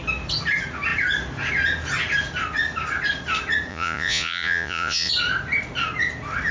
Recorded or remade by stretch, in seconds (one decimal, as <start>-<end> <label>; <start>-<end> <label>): 0.0-3.7 recorded; 3.7-5.1 remade; 5.1-6.5 recorded